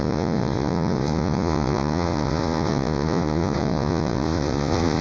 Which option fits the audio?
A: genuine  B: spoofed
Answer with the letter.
B